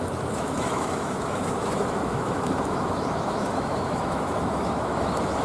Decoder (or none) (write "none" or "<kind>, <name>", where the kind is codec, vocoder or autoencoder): autoencoder, DAC-VAE